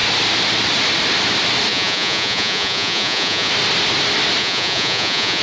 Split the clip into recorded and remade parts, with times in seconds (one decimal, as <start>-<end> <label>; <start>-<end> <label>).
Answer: 0.0-1.7 recorded; 1.7-3.5 remade; 3.5-4.4 recorded; 4.4-5.4 remade